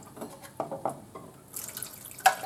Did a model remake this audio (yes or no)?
no